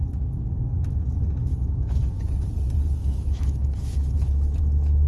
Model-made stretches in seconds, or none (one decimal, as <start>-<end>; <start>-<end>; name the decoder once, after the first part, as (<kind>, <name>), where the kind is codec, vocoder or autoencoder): 1.5-2.3 (autoencoder, DAC-VAE); 3.0-4.6